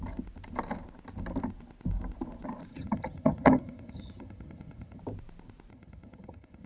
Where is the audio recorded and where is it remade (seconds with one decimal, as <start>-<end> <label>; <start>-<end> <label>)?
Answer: 0.0-2.7 recorded; 2.7-5.0 remade; 5.0-5.7 recorded; 5.7-6.7 remade